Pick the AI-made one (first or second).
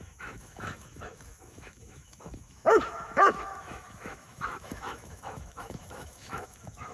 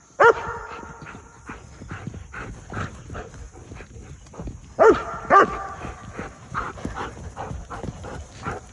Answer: first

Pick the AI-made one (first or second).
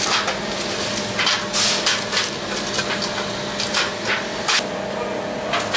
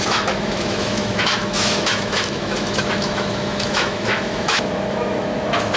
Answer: second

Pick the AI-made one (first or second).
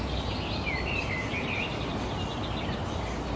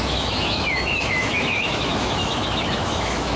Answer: second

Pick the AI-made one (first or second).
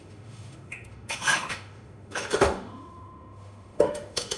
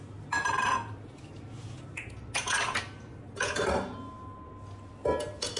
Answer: first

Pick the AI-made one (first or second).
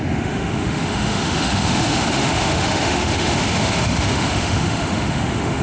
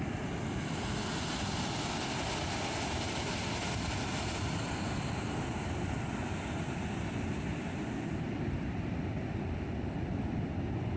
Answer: first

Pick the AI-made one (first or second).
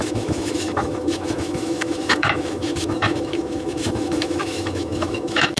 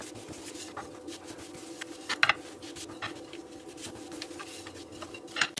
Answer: first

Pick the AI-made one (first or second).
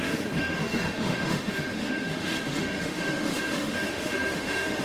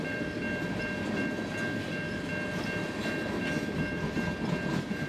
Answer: first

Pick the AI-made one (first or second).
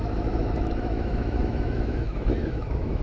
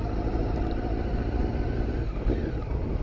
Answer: first